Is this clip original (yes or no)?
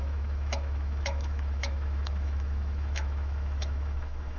no